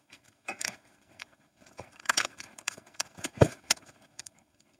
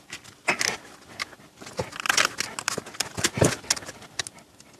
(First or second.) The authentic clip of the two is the second